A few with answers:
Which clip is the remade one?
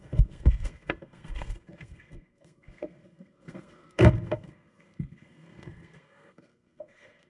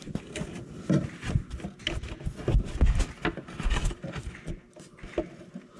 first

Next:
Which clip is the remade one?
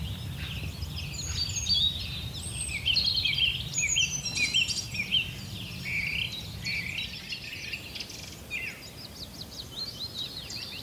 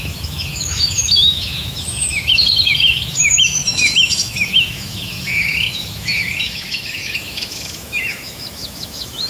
second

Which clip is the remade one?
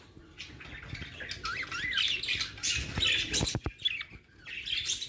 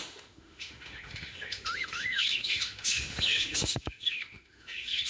second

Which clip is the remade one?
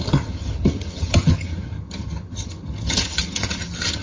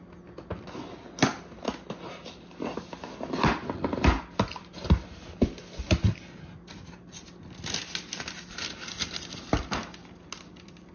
first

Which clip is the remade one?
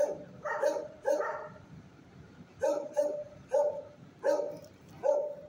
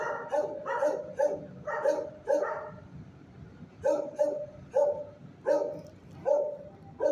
first